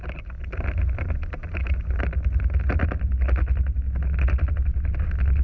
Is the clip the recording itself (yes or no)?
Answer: yes